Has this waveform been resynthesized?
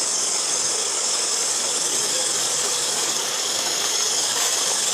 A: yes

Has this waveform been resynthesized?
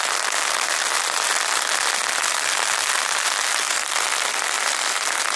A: no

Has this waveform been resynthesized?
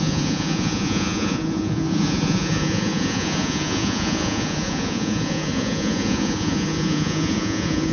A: yes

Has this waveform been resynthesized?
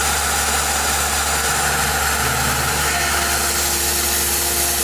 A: no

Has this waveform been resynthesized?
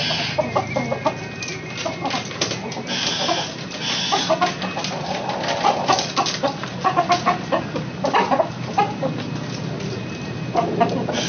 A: no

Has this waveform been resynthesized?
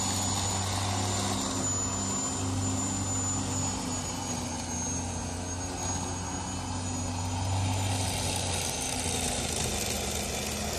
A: no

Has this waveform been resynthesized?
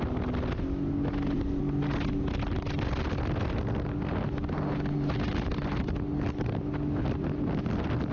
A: no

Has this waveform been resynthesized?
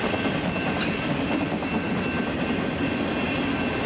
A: no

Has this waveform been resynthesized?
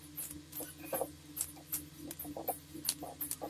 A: no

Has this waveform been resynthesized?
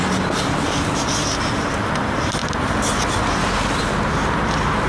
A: no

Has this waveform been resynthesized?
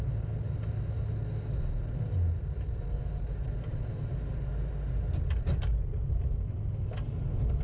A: no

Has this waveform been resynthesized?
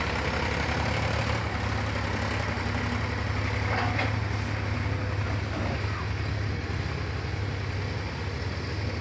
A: no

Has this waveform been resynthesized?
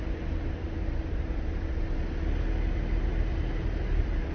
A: no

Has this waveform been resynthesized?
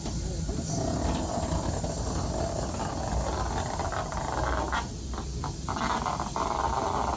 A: no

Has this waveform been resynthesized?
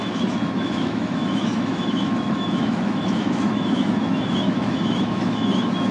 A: yes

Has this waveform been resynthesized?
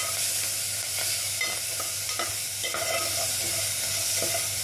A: no